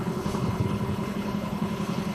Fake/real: fake